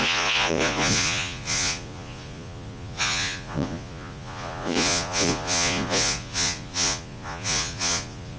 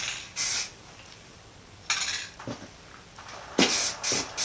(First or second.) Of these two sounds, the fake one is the first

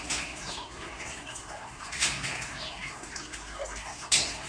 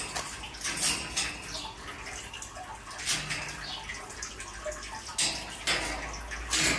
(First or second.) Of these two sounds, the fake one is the first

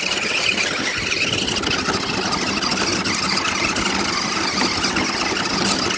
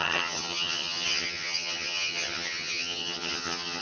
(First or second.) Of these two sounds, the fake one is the second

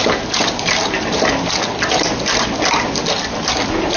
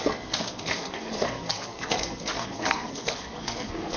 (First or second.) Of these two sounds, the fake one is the second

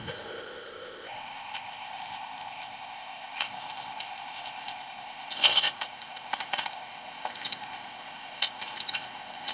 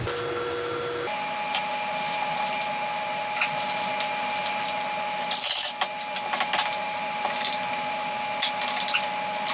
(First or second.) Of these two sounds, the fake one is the first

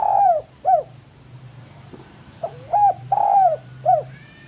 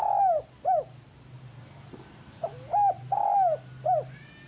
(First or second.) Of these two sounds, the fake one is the first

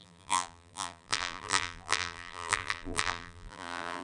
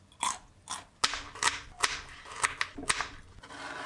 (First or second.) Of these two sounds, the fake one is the first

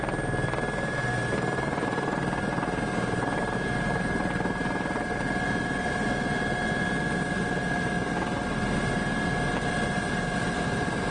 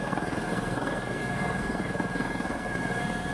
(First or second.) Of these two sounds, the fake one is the second